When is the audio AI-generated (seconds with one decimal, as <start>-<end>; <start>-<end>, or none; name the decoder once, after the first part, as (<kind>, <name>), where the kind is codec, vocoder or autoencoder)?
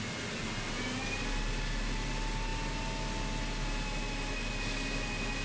none